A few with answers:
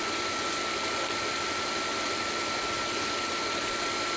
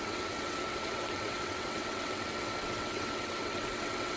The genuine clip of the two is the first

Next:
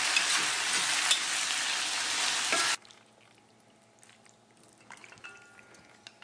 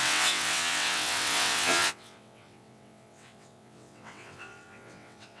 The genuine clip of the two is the first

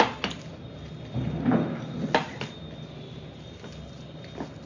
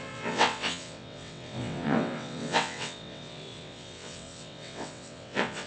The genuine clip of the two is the first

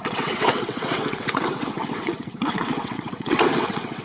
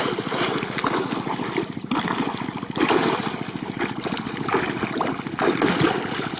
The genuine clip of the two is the second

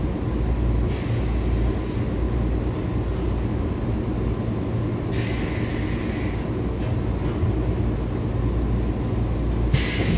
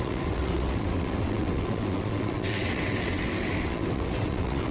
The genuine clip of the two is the first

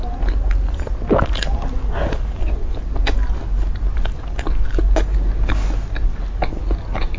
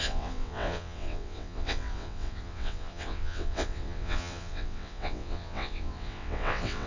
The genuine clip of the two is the first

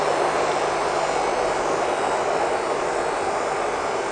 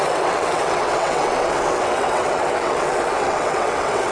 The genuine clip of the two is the first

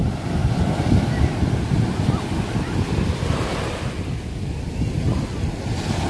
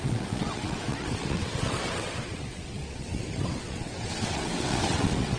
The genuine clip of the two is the first